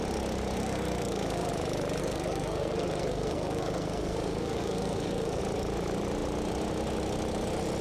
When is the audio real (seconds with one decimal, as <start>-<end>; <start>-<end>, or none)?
0.0-0.6; 1.5-2.0; 5.4-7.8